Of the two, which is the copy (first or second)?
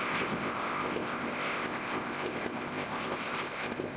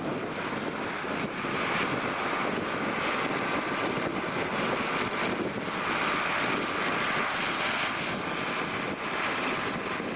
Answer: first